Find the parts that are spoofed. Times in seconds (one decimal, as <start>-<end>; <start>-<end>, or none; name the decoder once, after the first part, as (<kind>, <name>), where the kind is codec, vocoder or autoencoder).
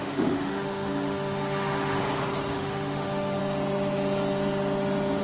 0.0-2.0 (autoencoder, DAC-VAE); 2.5-3.4